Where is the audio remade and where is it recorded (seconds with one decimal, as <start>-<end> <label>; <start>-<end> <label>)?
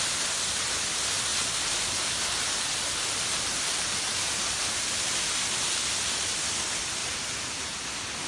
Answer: 0.0-7.0 recorded; 7.0-7.9 remade; 7.9-8.3 recorded